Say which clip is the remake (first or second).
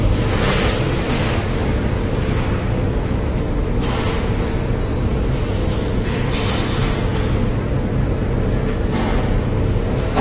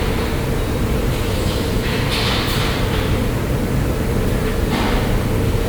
second